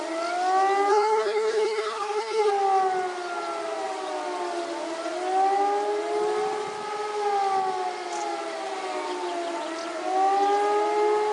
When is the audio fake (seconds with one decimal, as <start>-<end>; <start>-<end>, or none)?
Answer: 0.9-2.5